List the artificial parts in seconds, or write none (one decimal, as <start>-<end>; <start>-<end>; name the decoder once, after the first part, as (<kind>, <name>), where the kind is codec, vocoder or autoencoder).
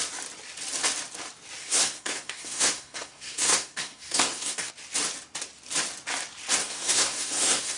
1.6-4.7 (codec, SNAC); 6.6-7.8